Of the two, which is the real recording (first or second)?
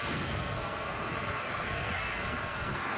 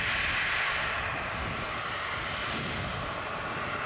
second